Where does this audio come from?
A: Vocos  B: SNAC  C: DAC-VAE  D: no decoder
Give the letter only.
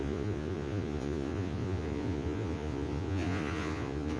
A